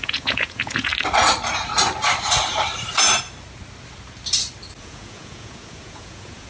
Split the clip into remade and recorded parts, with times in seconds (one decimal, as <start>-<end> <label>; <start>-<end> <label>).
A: 0.0-0.9 remade; 0.9-4.8 recorded; 4.8-6.5 remade